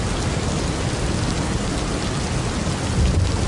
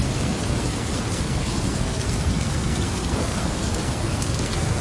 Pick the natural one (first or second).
first